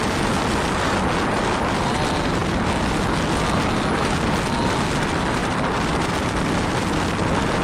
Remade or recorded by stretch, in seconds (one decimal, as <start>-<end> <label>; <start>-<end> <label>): 0.0-7.6 recorded